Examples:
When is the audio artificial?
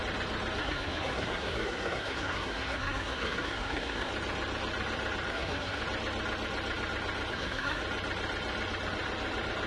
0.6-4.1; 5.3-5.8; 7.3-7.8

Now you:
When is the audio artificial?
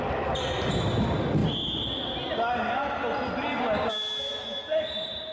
none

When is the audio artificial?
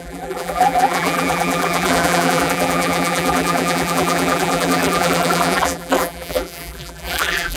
0.0-7.6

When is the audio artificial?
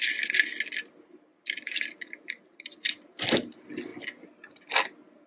1.3-2.7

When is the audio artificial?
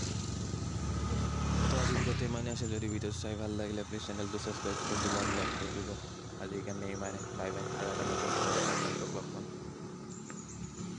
none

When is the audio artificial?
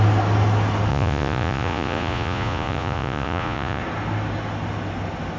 0.9-3.8